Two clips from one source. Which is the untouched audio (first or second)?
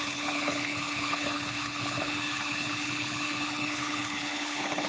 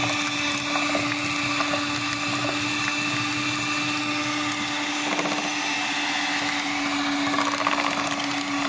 second